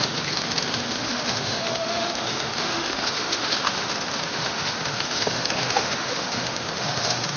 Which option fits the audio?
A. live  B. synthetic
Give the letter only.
B